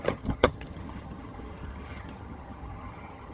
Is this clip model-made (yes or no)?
yes